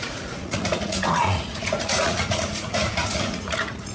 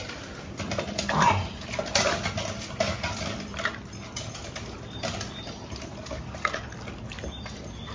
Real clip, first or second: second